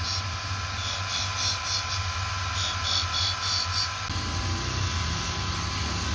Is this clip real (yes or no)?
yes